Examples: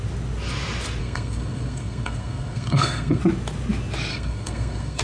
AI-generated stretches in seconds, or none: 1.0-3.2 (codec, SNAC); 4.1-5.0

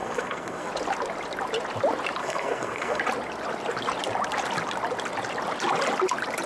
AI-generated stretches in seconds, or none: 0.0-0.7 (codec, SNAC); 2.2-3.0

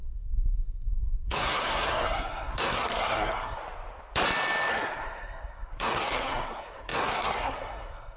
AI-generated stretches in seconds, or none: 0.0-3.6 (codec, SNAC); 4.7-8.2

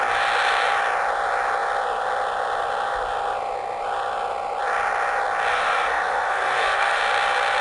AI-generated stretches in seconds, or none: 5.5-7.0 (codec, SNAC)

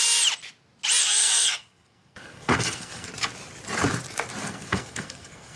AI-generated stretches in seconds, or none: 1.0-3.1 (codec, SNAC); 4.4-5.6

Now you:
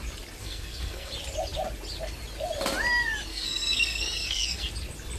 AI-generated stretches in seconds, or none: 0.4-1.1 (codec, SNAC); 3.3-4.7